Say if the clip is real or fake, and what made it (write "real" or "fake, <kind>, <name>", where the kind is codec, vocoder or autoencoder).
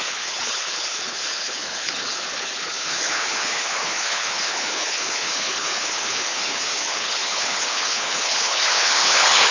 fake, codec, HILCodec